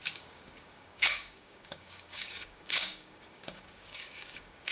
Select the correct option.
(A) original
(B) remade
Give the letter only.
B